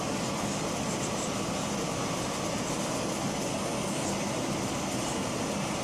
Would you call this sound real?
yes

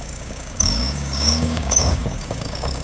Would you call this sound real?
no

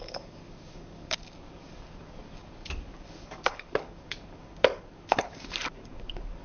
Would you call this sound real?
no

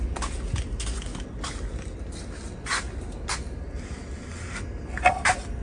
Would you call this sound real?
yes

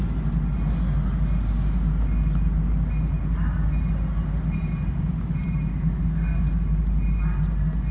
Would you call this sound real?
yes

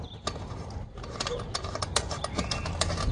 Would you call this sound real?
yes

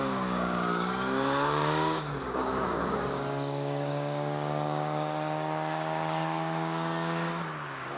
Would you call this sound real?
no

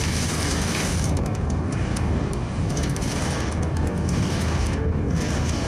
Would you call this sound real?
no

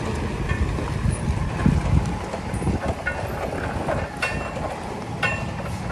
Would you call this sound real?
yes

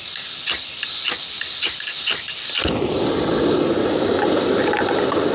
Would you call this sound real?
yes